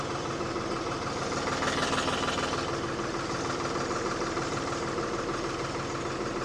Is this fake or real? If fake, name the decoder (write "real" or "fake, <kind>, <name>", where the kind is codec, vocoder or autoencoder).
real